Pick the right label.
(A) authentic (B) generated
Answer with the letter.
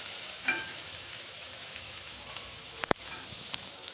B